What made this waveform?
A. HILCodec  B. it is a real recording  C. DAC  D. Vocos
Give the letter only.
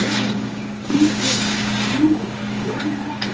C